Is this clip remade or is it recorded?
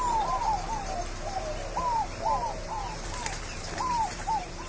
remade